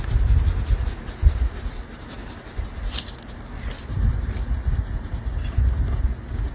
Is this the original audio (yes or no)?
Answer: yes